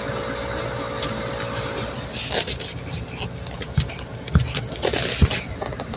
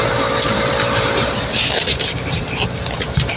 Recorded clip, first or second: first